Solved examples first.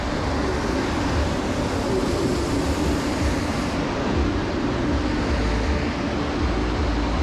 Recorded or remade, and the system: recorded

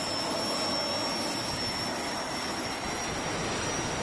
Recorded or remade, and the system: recorded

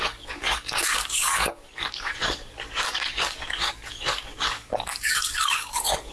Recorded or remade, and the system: remade, codec, DAC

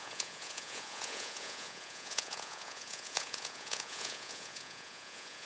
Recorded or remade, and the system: remade, vocoder, Vocos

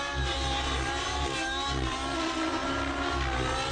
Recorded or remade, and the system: recorded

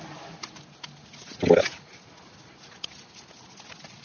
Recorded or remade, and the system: recorded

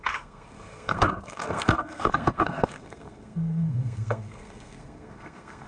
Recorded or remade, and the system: remade, codec, SNAC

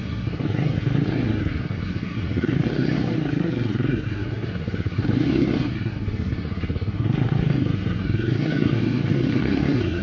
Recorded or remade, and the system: remade, codec, SNAC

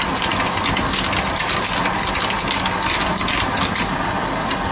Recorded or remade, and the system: recorded